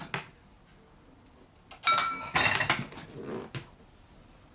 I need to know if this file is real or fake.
real